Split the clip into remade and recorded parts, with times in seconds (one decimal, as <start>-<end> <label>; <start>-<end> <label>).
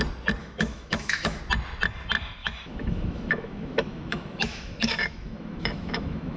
0.0-0.4 recorded; 0.4-1.4 remade; 1.4-2.4 recorded; 2.4-6.4 remade